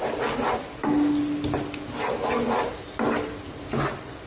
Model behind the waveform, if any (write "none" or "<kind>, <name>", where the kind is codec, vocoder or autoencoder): none